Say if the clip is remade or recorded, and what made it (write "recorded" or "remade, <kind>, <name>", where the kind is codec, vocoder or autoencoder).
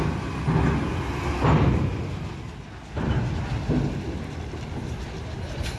recorded